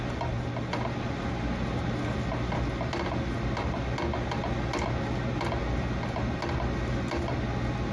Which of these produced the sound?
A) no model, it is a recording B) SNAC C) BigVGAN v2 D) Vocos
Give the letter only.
A